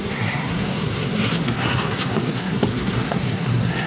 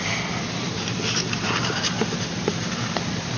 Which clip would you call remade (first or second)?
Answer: first